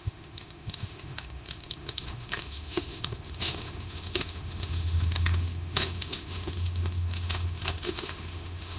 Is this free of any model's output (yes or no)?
no